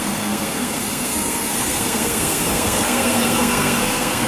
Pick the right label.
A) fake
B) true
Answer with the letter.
A